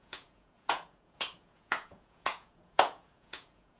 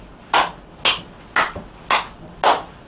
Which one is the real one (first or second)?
second